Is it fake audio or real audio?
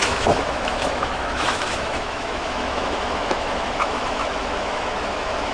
fake